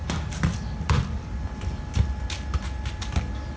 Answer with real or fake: real